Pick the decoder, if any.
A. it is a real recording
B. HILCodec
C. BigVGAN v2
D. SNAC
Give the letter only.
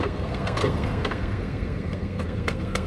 D